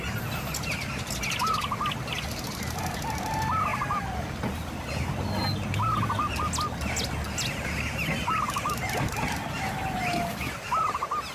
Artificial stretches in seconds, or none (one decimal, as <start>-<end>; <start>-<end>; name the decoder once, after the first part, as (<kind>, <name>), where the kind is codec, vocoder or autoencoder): none